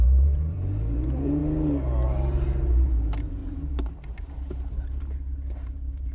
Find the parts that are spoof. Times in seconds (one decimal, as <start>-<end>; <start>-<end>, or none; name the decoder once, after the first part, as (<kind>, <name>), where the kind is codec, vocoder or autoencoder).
0.0-1.4 (vocoder, BigVGAN v2); 2.7-3.4; 3.9-6.1